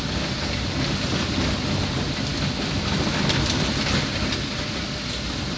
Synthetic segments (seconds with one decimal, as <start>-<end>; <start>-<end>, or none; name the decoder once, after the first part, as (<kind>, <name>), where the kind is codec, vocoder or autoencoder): none